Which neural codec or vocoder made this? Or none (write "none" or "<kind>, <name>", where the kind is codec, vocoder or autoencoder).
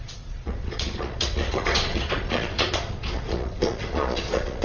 vocoder, Vocos